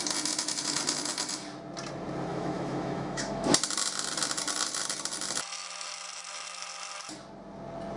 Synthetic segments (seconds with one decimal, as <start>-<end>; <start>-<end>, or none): 2.3-3.5